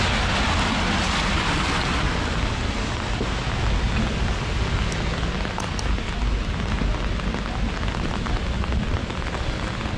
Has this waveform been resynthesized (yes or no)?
no